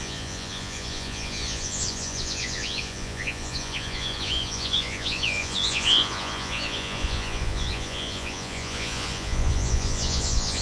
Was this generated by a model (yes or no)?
yes